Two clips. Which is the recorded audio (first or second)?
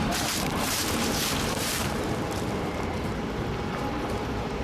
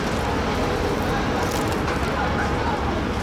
second